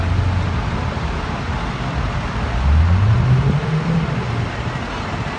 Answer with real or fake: real